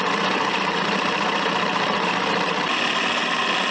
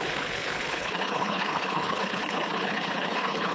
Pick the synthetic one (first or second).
second